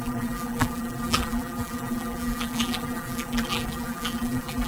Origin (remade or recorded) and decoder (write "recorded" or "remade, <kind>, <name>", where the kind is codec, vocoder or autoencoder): remade, vocoder, BigVGAN v2